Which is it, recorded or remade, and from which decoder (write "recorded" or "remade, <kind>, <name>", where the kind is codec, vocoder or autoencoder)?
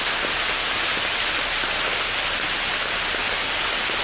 recorded